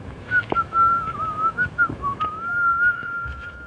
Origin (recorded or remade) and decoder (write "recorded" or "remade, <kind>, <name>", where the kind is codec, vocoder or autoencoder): remade, autoencoder, DAC-VAE